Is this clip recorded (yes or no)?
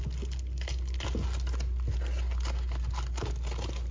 yes